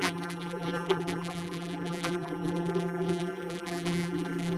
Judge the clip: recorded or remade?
remade